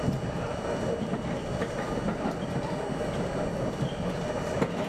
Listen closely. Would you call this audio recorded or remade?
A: recorded